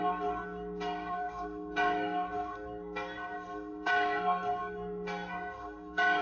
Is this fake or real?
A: fake